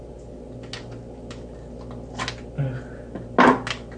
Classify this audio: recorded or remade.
recorded